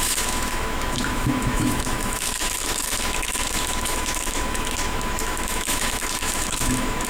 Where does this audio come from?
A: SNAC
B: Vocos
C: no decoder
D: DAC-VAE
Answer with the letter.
D